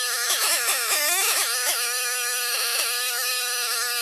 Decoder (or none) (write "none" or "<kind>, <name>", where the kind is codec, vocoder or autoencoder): autoencoder, DAC-VAE